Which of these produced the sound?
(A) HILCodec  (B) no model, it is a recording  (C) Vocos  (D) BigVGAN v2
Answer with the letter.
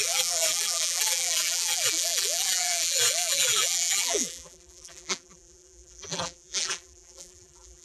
D